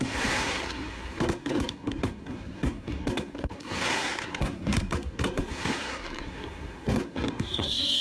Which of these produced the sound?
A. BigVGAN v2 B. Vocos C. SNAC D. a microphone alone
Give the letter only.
C